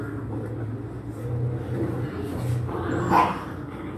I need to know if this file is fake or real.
real